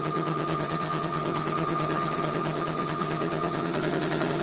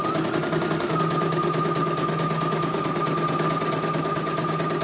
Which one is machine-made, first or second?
first